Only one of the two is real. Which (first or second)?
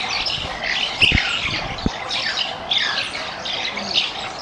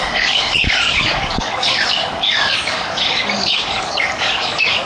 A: first